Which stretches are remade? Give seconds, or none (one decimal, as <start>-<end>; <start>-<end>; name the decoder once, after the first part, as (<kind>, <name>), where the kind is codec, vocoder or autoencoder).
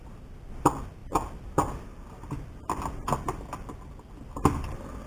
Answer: none